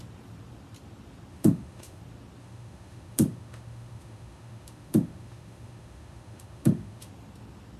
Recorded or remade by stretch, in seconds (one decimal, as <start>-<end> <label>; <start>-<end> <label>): 0.0-1.3 recorded; 1.3-2.0 remade; 2.0-2.4 recorded; 2.4-7.1 remade; 7.1-7.8 recorded